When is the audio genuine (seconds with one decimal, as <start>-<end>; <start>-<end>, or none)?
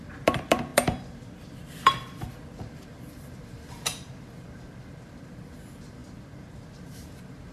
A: none